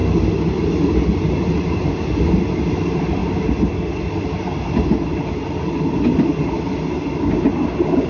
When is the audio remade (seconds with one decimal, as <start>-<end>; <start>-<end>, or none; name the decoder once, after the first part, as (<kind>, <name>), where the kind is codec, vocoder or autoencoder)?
none